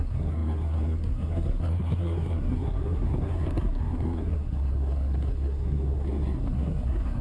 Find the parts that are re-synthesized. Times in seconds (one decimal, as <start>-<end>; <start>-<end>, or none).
0.0-7.2